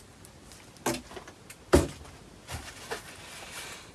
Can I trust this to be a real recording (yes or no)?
yes